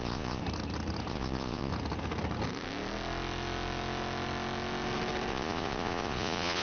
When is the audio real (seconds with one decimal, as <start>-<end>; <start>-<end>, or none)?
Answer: 0.4-1.1; 1.7-5.3